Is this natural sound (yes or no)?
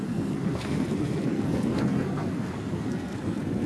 no